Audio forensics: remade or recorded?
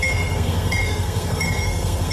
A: remade